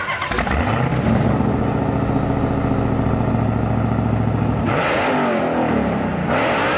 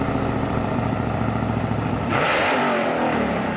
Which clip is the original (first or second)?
first